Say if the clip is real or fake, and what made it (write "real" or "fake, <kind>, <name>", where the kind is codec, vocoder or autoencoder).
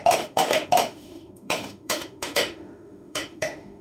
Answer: fake, autoencoder, DAC-VAE